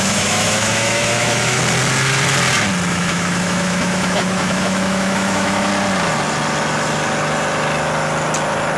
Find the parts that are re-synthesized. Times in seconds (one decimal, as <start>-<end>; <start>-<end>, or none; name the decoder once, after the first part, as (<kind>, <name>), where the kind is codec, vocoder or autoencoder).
0.0-1.6 (autoencoder, DAC-VAE); 2.9-5.7